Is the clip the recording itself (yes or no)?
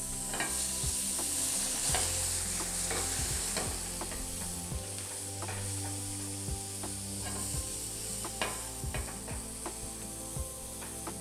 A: yes